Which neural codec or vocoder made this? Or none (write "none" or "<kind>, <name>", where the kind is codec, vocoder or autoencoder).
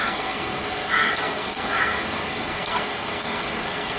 codec, SNAC